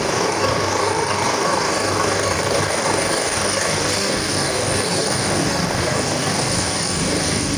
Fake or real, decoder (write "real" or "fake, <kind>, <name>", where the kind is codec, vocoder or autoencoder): fake, codec, DAC